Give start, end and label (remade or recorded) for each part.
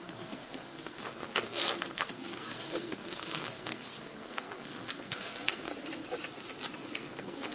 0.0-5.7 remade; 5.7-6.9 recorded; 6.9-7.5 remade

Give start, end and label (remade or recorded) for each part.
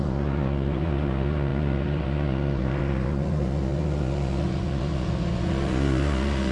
0.0-6.5 remade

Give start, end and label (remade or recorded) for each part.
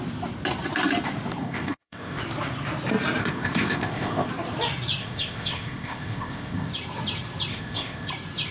0.0-1.4 recorded; 1.4-2.2 remade; 2.2-3.2 recorded; 3.2-4.3 remade; 4.3-5.0 recorded; 5.0-6.7 remade; 6.7-7.5 recorded; 7.5-8.1 remade; 8.1-8.5 recorded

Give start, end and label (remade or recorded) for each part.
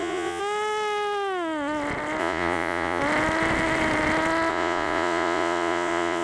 0.0-0.4 remade; 0.4-2.2 recorded; 2.2-3.0 remade; 3.0-4.5 recorded; 4.5-6.2 remade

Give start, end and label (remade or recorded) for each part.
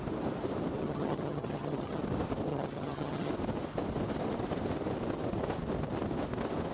0.0-0.8 recorded; 0.8-2.0 remade; 2.0-2.5 recorded; 2.5-3.3 remade; 3.3-6.7 recorded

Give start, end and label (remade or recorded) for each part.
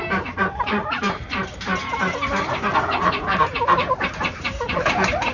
0.0-1.7 remade; 1.7-3.0 recorded; 3.0-5.3 remade